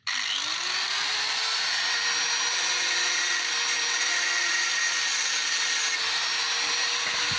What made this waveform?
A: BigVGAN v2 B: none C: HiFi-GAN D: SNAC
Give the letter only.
B